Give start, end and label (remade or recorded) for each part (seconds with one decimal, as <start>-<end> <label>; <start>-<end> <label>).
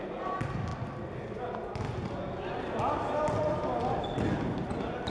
0.0-5.1 recorded